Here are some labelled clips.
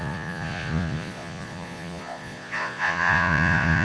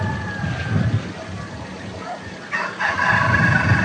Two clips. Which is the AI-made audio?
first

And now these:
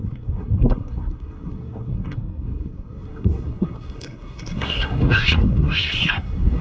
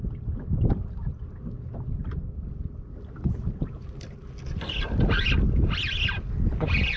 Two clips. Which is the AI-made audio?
first